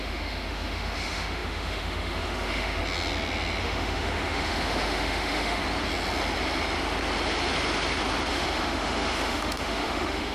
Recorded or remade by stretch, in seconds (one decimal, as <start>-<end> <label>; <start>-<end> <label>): 0.0-2.8 remade; 2.8-3.6 recorded; 3.6-5.6 remade; 5.6-8.3 recorded; 8.3-10.3 remade